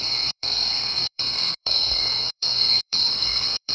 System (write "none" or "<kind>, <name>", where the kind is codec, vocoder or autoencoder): codec, SNAC